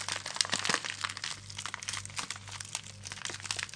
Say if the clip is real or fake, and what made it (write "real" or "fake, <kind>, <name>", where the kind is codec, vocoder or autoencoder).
real